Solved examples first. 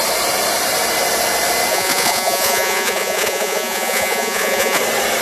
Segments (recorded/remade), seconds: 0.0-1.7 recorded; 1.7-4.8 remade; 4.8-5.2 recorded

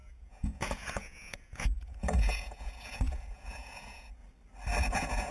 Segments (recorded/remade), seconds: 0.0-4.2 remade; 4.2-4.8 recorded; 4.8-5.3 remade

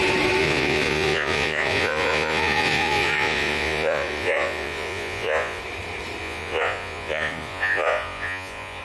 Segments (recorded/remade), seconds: 0.0-0.4 recorded; 0.4-5.6 remade; 5.6-6.2 recorded; 6.2-8.8 remade

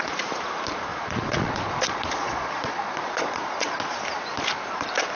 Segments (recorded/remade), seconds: 0.0-0.9 recorded; 0.9-4.0 remade; 4.0-5.2 recorded

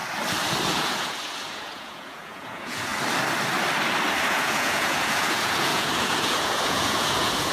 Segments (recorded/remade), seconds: 0.0-0.7 recorded; 0.7-2.9 remade; 2.9-4.3 recorded; 4.3-7.5 remade

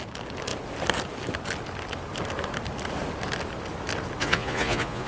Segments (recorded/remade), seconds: 0.0-4.2 recorded; 4.2-5.1 remade

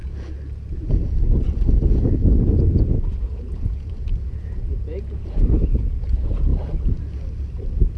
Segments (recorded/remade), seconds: 0.0-2.7 recorded; 2.7-6.5 remade; 6.5-8.0 recorded

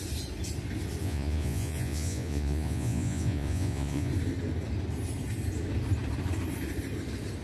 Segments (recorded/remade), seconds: 0.0-1.0 recorded; 1.0-4.1 remade; 4.1-7.4 recorded